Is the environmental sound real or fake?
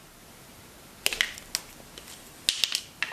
real